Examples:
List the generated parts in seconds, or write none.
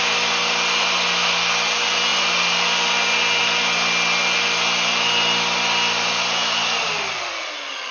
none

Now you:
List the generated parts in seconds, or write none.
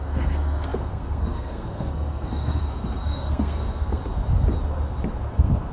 0.0-4.0 (codec, SNAC); 5.1-5.7